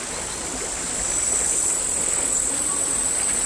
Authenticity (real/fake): real